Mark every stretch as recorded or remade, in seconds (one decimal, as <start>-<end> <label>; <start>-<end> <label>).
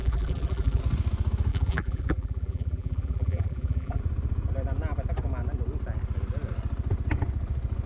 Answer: 0.0-0.8 remade; 0.8-1.5 recorded; 1.5-4.0 remade; 4.0-7.9 recorded